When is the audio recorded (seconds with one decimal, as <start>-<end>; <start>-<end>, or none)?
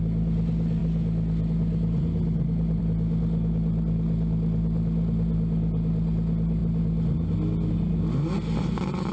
0.0-9.1